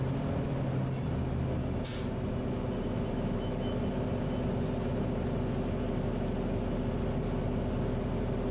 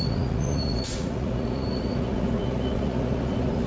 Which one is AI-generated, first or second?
second